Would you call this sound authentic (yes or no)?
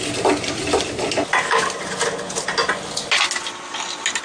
yes